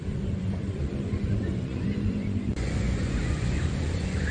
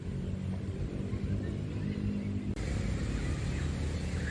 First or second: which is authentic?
second